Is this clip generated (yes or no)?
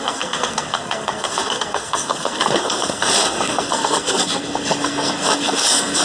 yes